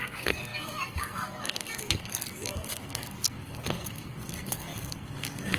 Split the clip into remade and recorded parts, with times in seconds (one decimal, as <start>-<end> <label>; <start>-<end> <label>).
0.0-5.6 remade